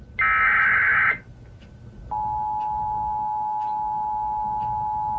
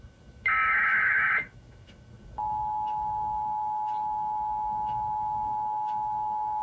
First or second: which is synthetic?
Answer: second